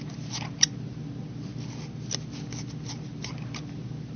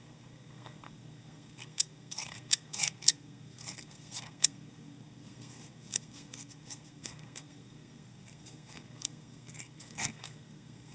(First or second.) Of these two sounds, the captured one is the first